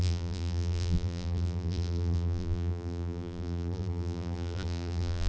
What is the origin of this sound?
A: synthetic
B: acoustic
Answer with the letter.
A